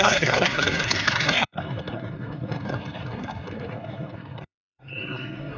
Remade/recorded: remade